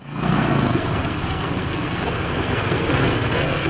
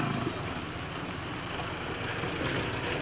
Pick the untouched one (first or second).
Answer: second